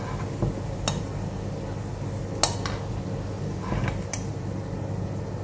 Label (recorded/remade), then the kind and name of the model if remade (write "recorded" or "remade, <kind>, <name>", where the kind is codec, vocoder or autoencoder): recorded